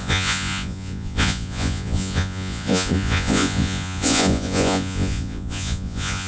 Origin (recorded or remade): remade